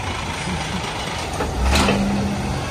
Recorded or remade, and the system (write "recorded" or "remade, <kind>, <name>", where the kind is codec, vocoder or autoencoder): recorded